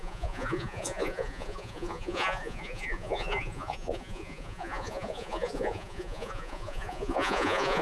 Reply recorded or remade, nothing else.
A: remade